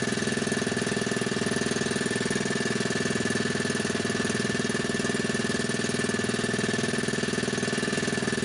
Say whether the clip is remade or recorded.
recorded